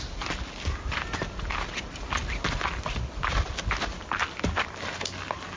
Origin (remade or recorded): recorded